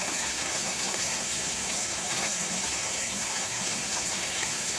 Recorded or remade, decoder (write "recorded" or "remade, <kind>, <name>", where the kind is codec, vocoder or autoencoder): remade, codec, SNAC